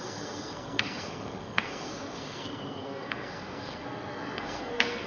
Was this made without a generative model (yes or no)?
no